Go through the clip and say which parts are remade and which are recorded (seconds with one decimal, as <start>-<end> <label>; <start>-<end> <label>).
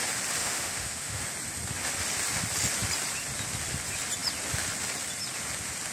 0.0-0.4 recorded; 0.4-1.2 remade; 1.2-5.9 recorded